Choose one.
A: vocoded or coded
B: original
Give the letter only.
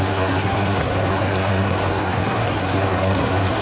A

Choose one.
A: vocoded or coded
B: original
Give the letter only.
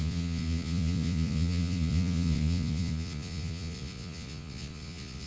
A